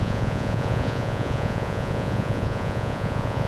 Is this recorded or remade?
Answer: remade